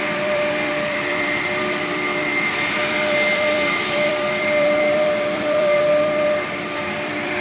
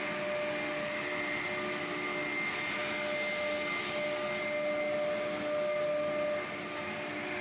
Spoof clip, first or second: first